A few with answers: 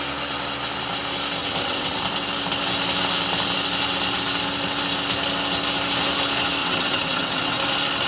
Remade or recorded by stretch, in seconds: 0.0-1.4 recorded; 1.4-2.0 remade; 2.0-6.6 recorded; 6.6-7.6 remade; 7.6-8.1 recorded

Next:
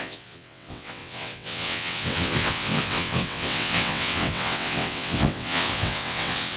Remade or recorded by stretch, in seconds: 0.0-6.6 remade

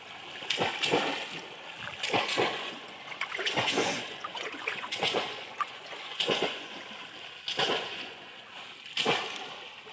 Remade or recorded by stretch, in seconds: 0.0-2.3 recorded; 2.3-6.8 remade; 6.8-7.6 recorded; 7.6-8.5 remade; 8.5-9.9 recorded

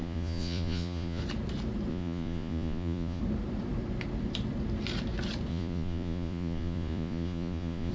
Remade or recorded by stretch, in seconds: 0.0-1.2 remade; 1.2-1.9 recorded; 1.9-3.2 remade; 3.2-5.5 recorded; 5.5-7.9 remade

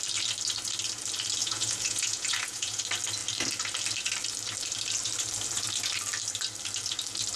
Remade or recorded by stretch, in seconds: 0.0-1.4 recorded; 1.4-2.8 remade; 2.8-7.4 recorded

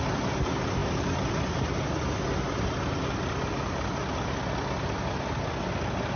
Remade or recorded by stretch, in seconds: 0.0-6.2 recorded

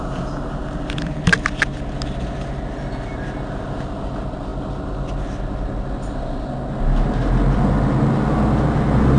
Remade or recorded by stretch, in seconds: 0.0-9.2 recorded